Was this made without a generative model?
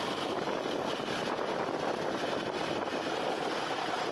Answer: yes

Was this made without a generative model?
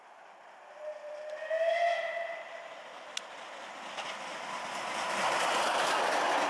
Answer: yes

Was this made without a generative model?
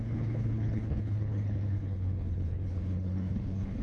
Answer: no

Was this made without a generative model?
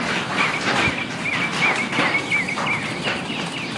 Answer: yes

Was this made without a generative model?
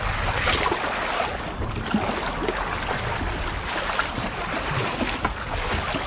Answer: yes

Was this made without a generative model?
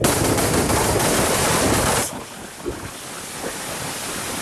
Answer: yes